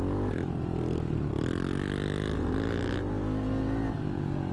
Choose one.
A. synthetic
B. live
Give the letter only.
B